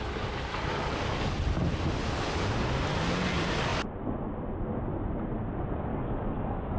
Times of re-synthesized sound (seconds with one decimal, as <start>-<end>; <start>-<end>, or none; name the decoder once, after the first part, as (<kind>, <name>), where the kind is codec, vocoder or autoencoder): 0.5-1.4 (codec, DAC); 5.9-6.8